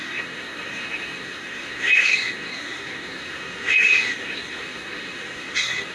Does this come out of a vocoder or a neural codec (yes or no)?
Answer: yes